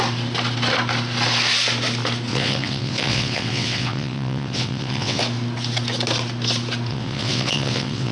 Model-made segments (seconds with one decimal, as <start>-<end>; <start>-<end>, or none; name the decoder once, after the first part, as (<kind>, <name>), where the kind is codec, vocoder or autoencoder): 2.3-5.2 (vocoder, WaveNeXt); 6.9-8.1